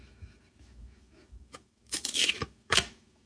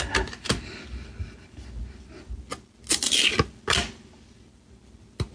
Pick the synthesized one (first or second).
first